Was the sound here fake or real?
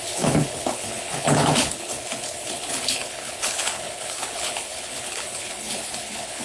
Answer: fake